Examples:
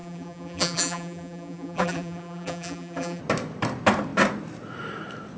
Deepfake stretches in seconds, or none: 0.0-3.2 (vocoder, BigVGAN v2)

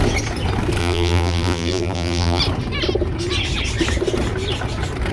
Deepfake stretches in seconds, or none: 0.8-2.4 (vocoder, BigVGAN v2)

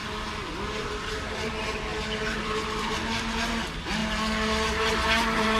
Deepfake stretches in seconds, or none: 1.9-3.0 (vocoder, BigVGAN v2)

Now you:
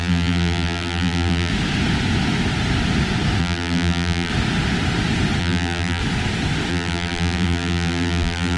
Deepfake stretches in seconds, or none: 0.0-1.5 (vocoder, BigVGAN v2); 3.4-4.3; 5.4-6.0; 6.7-8.6